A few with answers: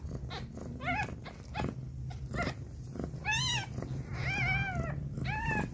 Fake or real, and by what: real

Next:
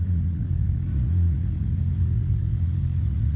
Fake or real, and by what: fake, vocoder, Vocos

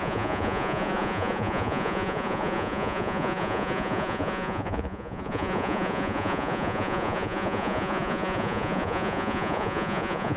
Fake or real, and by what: fake, vocoder, Vocos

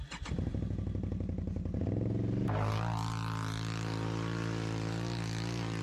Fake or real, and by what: real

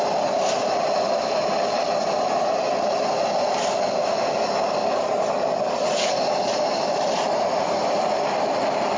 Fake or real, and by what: real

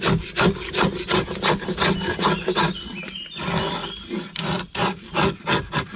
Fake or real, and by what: real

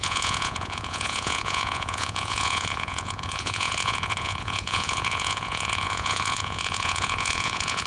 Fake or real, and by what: fake, vocoder, Vocos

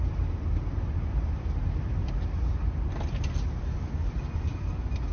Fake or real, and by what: real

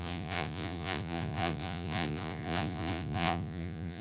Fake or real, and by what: fake, vocoder, Vocos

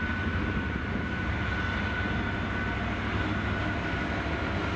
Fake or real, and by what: real